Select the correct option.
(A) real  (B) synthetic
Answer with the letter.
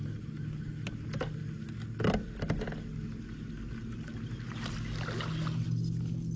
A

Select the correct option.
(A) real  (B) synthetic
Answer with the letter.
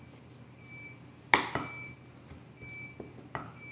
A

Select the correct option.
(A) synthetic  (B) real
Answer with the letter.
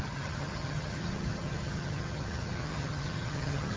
A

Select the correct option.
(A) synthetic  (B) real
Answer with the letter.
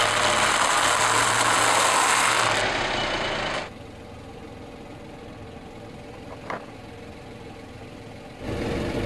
B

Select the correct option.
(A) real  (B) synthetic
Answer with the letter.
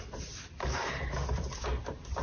A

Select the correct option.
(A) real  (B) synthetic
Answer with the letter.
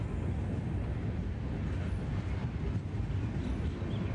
A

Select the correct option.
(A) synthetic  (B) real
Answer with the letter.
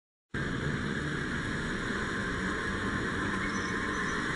A